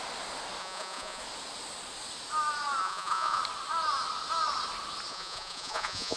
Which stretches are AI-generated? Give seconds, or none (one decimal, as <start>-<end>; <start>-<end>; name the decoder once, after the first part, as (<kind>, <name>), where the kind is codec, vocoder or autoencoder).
0.6-1.2 (vocoder, Vocos); 2.8-3.4; 5.1-6.2